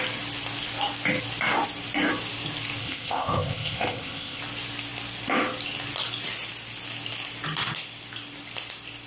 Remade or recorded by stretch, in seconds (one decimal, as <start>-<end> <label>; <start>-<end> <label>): 0.0-2.8 recorded; 2.8-4.4 remade; 4.4-9.1 recorded